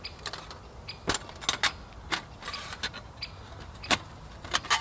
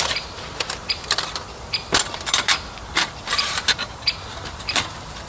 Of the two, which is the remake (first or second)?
second